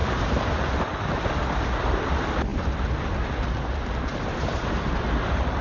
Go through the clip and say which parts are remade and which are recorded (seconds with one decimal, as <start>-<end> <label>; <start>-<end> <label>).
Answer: 0.0-0.5 remade; 0.5-4.1 recorded; 4.1-4.9 remade; 4.9-5.6 recorded